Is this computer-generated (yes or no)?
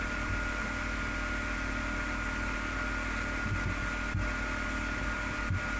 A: no